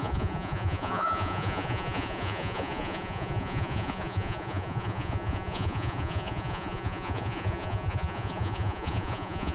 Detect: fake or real fake